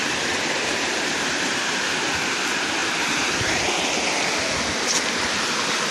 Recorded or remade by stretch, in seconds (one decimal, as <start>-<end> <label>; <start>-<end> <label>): 0.0-2.1 remade; 2.1-5.9 recorded